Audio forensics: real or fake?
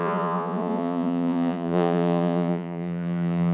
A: fake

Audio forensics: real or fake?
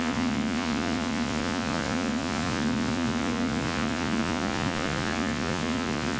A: fake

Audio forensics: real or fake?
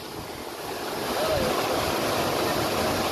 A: real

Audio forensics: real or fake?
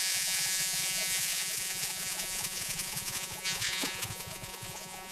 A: fake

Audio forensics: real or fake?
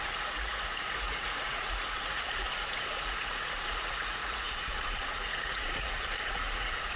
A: fake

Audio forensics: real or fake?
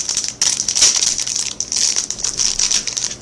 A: real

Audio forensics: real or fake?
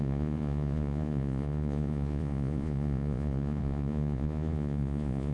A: fake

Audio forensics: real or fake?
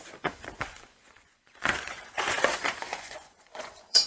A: fake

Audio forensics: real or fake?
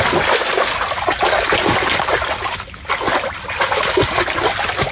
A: real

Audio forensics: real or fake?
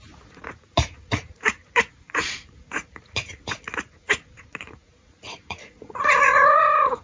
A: fake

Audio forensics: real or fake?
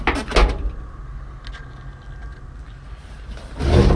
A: real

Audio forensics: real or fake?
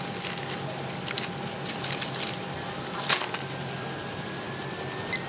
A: real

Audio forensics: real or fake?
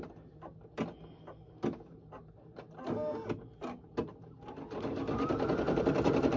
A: real